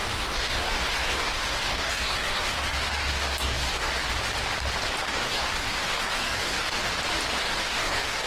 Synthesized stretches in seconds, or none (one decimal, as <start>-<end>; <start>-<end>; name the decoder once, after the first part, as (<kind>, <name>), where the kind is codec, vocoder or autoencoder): 0.0-3.9 (codec, DAC); 5.1-6.9; 7.4-8.3